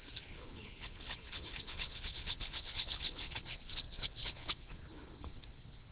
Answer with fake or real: fake